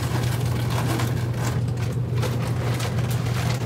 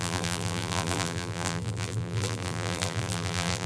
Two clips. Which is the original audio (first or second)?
first